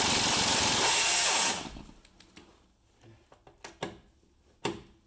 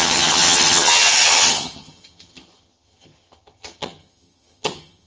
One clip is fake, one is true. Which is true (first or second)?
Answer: first